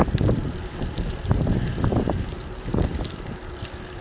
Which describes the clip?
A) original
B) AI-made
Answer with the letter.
A